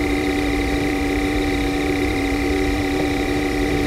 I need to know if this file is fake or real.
fake